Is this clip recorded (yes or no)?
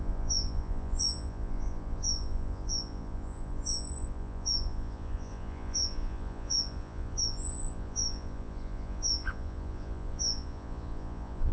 no